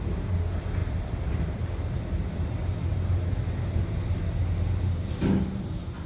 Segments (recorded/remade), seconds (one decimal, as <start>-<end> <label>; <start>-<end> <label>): 0.0-0.8 recorded; 0.8-2.0 remade; 2.0-6.1 recorded